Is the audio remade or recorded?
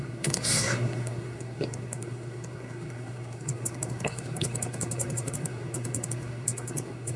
remade